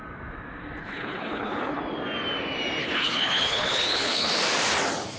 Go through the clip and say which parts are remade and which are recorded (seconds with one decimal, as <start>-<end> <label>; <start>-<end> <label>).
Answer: 0.0-0.8 recorded; 0.8-1.8 remade; 1.8-2.8 recorded; 2.8-4.3 remade; 4.3-5.2 recorded